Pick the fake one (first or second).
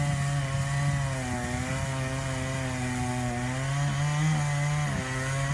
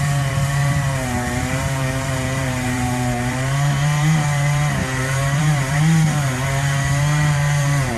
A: second